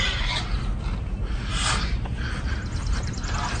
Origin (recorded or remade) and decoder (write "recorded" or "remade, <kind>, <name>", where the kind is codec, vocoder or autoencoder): recorded